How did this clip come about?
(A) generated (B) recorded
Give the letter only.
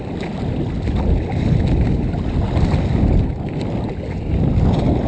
B